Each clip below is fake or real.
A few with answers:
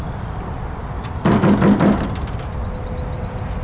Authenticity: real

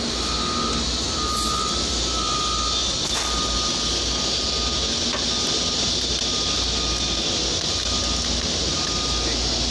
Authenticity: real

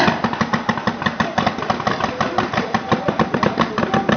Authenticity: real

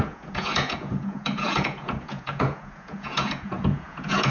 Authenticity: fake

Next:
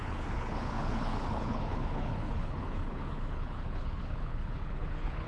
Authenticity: fake